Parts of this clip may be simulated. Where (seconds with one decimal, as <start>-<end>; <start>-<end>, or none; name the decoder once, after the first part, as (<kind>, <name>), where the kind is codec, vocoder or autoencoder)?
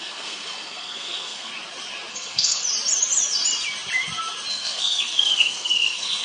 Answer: 0.0-1.5 (codec, SNAC); 2.1-2.6; 4.5-6.2